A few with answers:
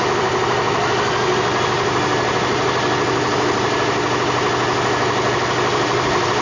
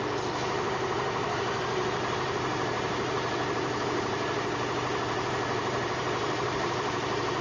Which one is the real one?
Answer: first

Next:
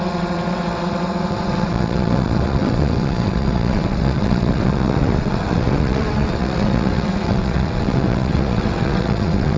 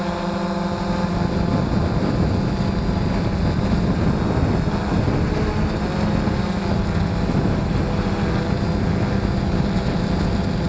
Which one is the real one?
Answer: second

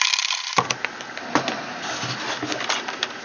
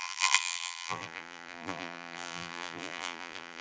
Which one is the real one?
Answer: first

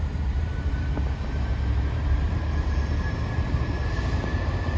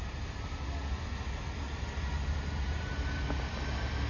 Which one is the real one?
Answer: second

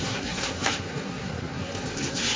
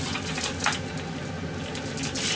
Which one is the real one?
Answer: second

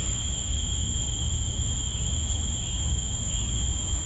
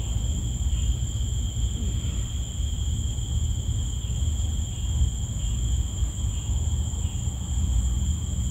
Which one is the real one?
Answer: second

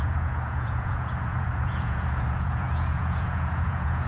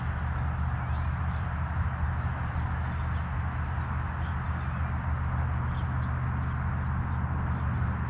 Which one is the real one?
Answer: second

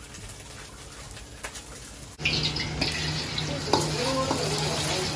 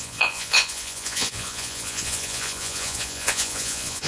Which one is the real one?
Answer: first